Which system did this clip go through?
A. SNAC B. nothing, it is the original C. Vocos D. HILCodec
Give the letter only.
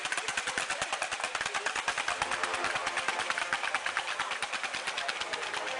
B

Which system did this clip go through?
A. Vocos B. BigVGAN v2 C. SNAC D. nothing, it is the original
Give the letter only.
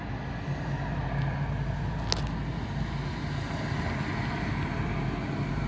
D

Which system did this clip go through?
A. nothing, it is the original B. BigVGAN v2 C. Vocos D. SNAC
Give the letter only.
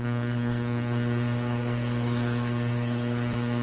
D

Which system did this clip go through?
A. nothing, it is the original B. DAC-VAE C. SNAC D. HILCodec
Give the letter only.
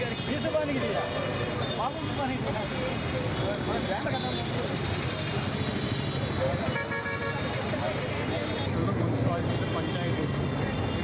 A